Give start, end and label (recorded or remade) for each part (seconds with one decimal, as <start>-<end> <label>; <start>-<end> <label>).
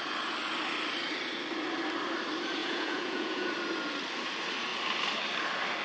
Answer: 0.0-2.6 recorded; 2.6-3.5 remade; 3.5-5.8 recorded